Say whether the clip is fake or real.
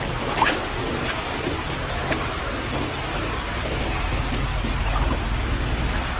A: real